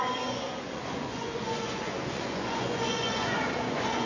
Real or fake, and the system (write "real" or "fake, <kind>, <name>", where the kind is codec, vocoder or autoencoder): fake, vocoder, Vocos